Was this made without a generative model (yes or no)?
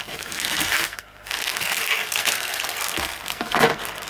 no